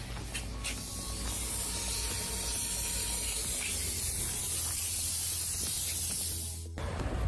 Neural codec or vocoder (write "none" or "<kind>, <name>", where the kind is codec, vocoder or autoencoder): none